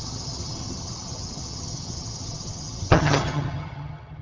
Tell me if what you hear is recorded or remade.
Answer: remade